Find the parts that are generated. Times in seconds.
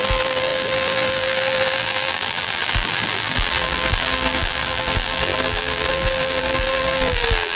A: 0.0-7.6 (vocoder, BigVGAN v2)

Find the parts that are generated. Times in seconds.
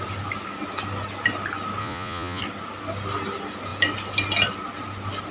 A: 1.8-2.4 (vocoder, Vocos)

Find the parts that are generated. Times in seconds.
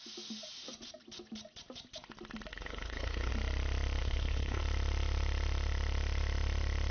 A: 2.5-3.3 (codec, HILCodec); 4.0-4.6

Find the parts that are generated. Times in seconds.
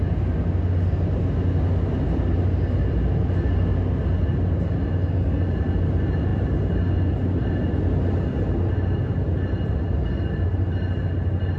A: none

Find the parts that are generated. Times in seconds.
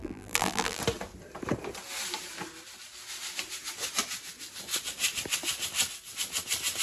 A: 0.0-0.8 (vocoder, BigVGAN v2)